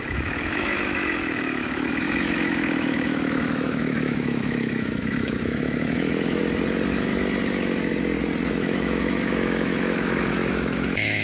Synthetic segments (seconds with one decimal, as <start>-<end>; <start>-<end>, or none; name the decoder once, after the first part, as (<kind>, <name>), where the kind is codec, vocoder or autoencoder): 0.0-6.4 (autoencoder, DAC-VAE); 8.5-11.2